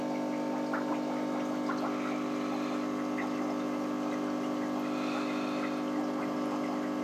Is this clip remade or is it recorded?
recorded